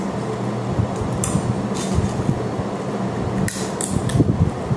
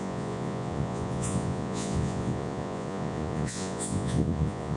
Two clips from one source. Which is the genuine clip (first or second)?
first